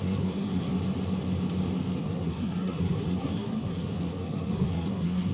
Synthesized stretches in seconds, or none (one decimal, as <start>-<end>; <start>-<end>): 0.0-0.7; 2.0-5.3

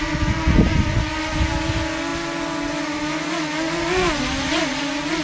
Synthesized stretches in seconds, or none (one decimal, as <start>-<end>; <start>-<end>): none

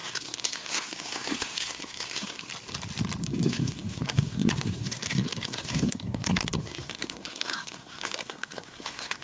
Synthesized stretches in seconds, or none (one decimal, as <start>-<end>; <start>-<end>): 0.0-2.5; 3.2-9.2

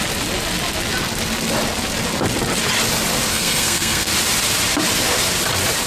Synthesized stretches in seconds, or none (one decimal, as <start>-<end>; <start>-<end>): 3.3-4.1

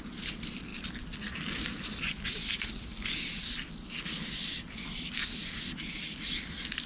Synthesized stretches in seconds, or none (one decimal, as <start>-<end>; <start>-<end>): 0.0-0.7; 4.1-6.9

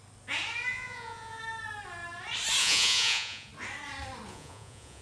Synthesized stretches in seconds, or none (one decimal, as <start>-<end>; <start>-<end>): 0.7-1.4; 2.6-3.5; 4.3-5.0

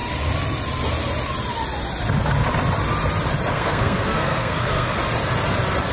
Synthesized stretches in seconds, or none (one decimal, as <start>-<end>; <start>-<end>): 3.5-5.0